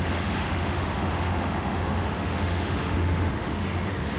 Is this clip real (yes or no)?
no